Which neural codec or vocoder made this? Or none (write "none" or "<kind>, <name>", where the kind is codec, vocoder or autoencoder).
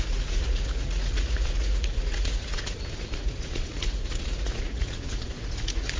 vocoder, Vocos